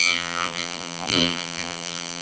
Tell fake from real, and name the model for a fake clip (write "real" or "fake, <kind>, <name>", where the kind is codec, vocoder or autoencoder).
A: fake, vocoder, BigVGAN v2